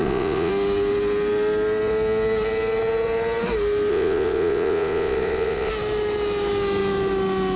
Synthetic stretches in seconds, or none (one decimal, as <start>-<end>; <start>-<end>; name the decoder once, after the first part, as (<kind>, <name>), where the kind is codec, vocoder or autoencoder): 0.0-0.5 (vocoder, Vocos); 3.9-5.7